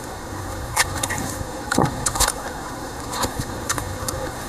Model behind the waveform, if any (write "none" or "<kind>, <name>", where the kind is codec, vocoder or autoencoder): codec, SNAC